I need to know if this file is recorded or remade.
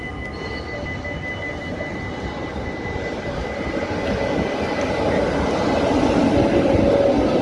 recorded